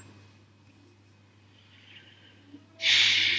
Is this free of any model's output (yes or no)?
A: yes